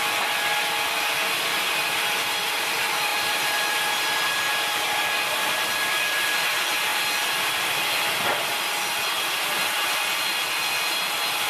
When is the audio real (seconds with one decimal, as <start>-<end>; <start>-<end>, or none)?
0.0-11.5